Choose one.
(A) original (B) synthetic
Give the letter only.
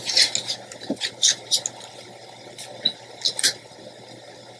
A